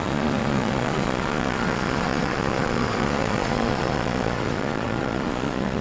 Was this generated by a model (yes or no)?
yes